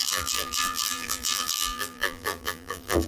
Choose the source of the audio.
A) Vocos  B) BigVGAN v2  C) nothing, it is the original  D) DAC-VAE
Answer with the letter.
B